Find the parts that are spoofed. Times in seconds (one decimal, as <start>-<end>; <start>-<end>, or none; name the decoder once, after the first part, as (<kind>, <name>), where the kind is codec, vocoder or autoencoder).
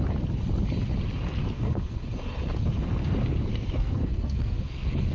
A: 1.4-2.0 (codec, SNAC); 3.5-5.1